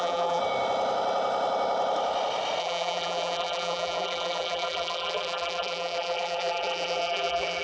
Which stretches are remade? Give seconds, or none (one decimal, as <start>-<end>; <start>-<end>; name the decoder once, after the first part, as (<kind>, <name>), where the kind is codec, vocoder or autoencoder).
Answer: 0.0-0.4 (vocoder, BigVGAN v2); 2.6-7.6